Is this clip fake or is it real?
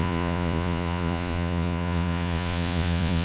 fake